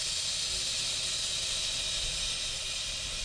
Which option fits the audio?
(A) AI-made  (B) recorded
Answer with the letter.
B